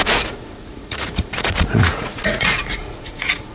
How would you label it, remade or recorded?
remade